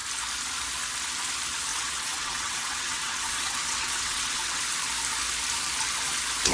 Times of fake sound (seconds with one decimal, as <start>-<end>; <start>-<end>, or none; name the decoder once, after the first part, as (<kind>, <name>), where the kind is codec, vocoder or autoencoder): 1.7-4.6 (vocoder, WaveNeXt)